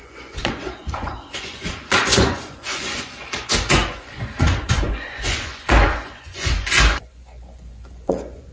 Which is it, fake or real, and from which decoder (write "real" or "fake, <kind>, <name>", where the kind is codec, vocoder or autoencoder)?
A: fake, vocoder, Vocos